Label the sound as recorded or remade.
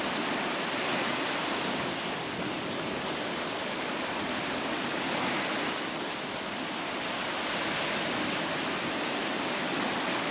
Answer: recorded